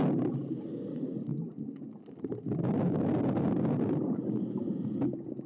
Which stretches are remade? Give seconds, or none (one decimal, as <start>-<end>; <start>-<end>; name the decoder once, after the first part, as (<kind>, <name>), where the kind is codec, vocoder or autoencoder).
none